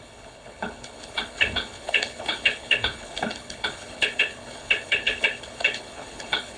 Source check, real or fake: fake